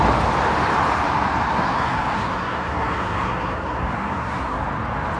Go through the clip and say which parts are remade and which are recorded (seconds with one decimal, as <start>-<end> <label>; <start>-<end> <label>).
0.0-1.5 recorded; 1.5-4.6 remade; 4.6-5.2 recorded